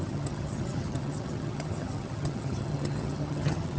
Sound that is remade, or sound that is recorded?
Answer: remade